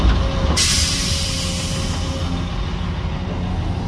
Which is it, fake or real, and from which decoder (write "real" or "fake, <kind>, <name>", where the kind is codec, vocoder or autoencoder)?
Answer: real